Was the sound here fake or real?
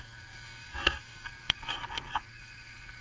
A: fake